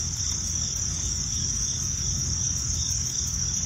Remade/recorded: remade